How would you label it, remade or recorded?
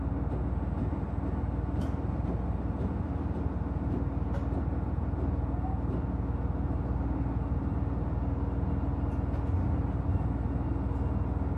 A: recorded